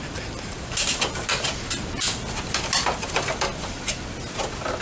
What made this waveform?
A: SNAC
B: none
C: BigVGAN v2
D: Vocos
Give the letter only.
C